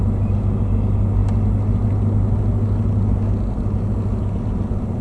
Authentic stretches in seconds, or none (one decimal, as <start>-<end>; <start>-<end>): 0.0-5.0